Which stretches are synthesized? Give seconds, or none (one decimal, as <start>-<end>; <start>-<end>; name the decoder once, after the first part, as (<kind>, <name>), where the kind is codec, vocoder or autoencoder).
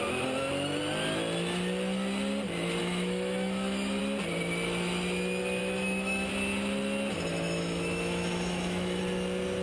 2.8-4.0 (autoencoder, DAC-VAE); 5.6-6.3; 7.3-9.0